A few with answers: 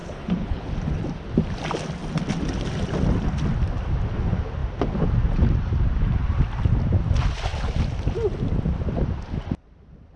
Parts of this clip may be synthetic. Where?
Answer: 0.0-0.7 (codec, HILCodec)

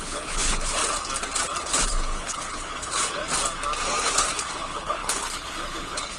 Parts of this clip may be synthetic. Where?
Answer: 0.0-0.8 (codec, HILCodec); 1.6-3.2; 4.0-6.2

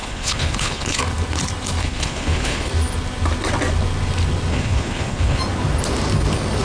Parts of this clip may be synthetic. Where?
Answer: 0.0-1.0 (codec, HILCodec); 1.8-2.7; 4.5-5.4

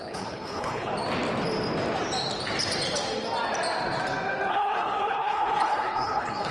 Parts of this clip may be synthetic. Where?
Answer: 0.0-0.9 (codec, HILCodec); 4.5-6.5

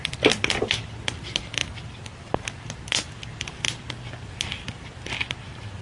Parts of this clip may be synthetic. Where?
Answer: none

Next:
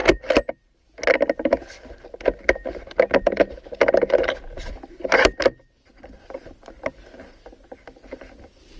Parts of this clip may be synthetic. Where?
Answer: none

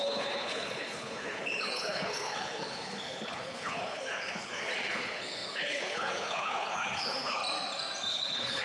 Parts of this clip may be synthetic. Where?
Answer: 0.0-7.4 (codec, HILCodec); 8.1-8.6